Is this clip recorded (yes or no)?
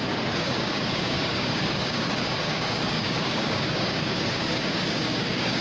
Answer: no